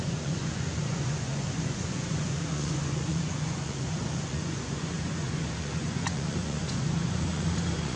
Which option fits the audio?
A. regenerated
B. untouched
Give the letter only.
A